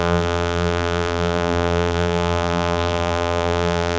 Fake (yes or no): yes